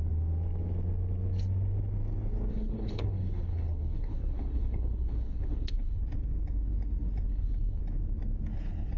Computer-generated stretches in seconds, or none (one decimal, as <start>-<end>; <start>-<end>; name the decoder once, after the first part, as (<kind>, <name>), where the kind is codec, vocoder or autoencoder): 2.5-6.0 (codec, HILCodec); 7.3-7.8